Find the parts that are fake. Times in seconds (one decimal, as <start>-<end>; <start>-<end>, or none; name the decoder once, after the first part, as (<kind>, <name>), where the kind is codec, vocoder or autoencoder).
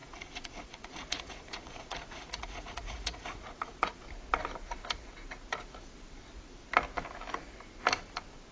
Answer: 0.0-4.1 (vocoder, Vocos)